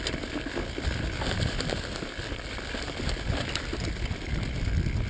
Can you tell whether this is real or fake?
real